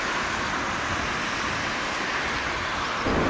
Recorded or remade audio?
recorded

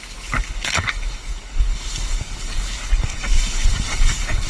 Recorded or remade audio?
remade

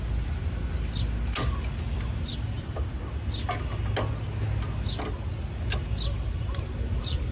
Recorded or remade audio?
recorded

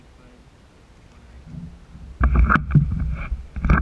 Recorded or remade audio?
recorded